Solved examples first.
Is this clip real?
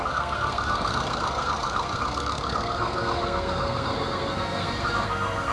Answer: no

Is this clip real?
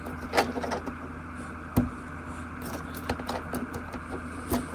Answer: yes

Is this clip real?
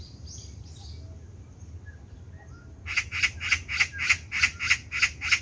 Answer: yes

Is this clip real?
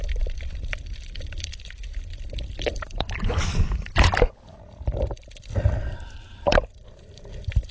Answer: no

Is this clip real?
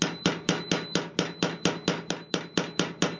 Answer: yes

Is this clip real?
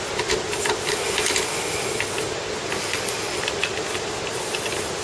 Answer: yes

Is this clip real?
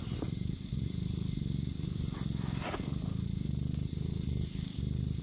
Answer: yes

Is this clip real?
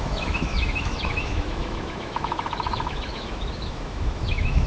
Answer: no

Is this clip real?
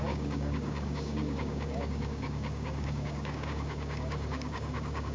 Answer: no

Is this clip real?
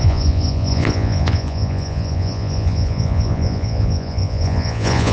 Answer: no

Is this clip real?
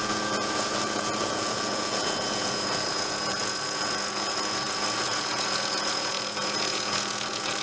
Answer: no